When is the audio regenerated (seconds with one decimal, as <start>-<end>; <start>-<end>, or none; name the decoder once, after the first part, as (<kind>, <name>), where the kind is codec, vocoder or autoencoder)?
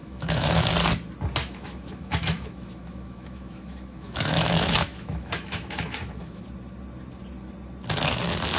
0.0-0.7 (autoencoder, DAC-VAE); 1.4-6.4